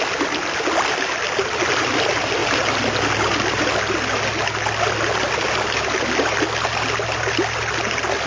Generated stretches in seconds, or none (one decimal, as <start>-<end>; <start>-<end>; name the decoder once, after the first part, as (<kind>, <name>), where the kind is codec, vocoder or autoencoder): 2.4-3.7 (vocoder, BigVGAN v2)